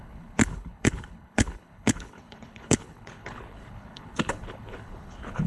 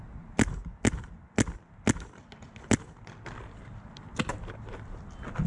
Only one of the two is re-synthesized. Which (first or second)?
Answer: first